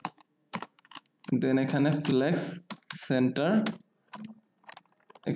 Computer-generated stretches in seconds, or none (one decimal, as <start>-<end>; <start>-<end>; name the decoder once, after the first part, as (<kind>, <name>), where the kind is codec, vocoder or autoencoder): 0.0-1.3 (autoencoder, DAC-VAE); 2.1-3.7